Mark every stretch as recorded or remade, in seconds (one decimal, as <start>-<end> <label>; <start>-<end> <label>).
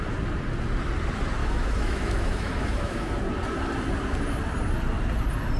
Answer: 0.0-1.4 recorded; 1.4-3.1 remade; 3.1-5.6 recorded